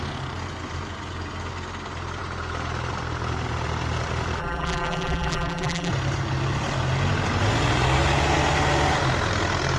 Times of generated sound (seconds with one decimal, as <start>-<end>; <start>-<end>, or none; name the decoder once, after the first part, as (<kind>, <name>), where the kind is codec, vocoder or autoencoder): 4.4-5.9 (vocoder, BigVGAN v2)